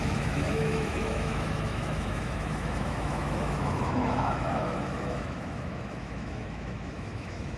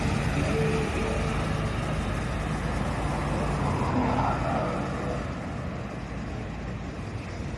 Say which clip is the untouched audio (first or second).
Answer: second